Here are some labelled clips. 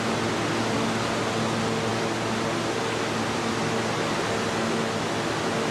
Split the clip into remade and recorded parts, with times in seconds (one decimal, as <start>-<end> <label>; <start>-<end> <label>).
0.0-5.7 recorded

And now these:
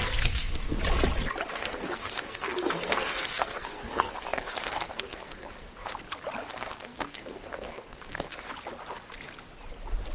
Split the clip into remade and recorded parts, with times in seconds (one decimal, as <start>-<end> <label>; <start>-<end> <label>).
0.0-0.8 remade; 0.8-1.5 recorded; 1.5-5.9 remade; 5.9-6.5 recorded; 6.5-8.5 remade; 8.5-10.1 recorded

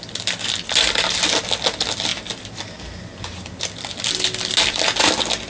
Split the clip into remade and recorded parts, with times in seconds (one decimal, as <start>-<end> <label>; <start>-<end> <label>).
0.0-5.5 recorded

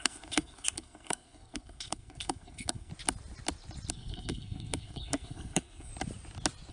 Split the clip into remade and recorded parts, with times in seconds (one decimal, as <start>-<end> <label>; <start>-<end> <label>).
0.0-2.9 remade; 2.9-3.9 recorded; 3.9-5.9 remade; 5.9-6.7 recorded

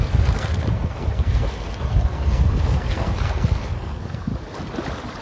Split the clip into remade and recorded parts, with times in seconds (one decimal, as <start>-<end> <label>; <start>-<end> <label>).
0.0-4.3 remade; 4.3-5.2 recorded